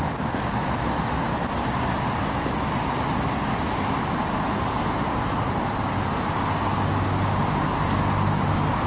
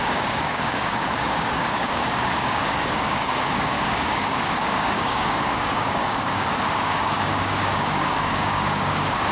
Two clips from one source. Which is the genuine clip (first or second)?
first